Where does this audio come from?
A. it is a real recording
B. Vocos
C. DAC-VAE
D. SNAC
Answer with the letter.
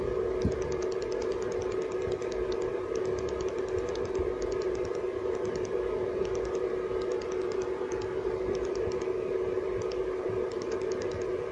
A